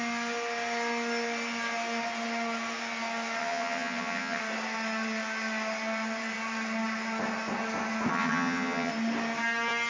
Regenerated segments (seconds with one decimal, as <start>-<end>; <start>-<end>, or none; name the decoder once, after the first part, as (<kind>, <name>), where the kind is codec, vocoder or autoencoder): 3.4-4.4 (vocoder, HiFi-GAN); 8.1-8.9